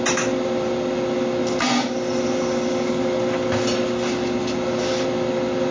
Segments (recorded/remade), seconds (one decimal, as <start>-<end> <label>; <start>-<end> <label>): 0.0-5.7 recorded